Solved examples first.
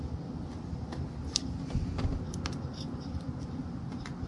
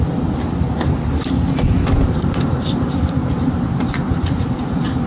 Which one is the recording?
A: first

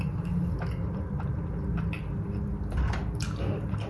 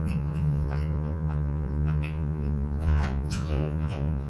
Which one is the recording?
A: first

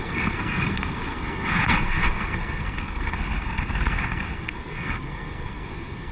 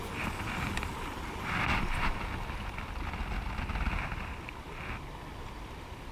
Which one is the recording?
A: second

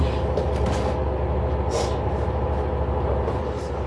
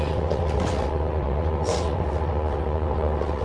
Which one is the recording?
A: first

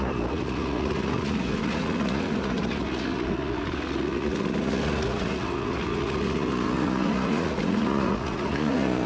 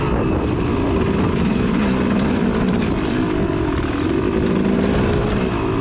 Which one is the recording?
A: second